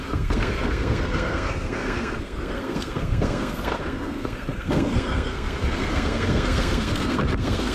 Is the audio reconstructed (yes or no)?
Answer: yes